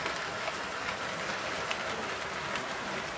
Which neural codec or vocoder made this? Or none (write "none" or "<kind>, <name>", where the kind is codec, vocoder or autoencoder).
none